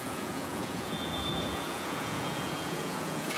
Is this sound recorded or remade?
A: remade